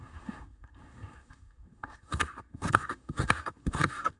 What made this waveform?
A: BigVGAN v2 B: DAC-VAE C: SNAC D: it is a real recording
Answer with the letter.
C